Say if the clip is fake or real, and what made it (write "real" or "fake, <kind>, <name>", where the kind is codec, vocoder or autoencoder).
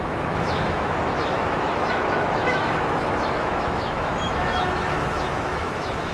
fake, autoencoder, DAC-VAE